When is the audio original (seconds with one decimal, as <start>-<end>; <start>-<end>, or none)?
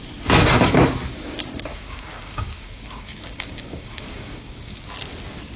0.0-1.7; 4.7-5.6